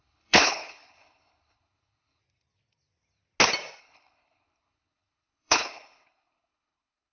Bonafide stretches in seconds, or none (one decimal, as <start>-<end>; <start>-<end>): 2.2-3.8